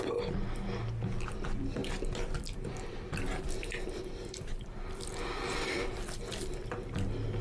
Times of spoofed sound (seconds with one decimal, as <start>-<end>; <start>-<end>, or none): 1.8-6.2